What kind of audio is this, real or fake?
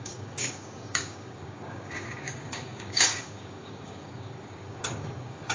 fake